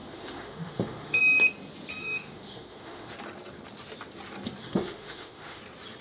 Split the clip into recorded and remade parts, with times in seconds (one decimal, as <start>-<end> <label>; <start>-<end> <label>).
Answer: 0.0-1.2 remade; 1.2-2.0 recorded; 2.0-3.1 remade; 3.1-4.6 recorded; 4.6-5.6 remade; 5.6-6.0 recorded